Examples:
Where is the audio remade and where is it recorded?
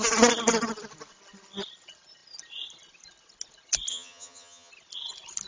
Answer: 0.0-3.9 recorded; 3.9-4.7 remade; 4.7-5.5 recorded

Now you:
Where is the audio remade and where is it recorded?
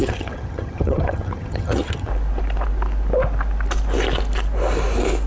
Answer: 0.0-2.1 remade; 2.1-5.3 recorded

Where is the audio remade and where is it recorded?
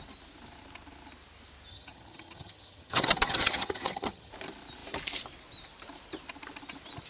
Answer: 0.0-1.7 recorded; 1.7-4.3 remade; 4.3-7.1 recorded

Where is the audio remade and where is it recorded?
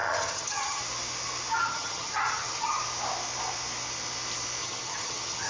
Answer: 0.0-0.8 remade; 0.8-1.6 recorded; 1.6-2.8 remade; 2.8-4.6 recorded; 4.6-5.5 remade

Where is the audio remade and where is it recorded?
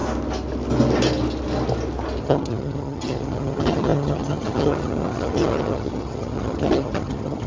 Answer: 0.0-2.2 recorded; 2.2-7.5 remade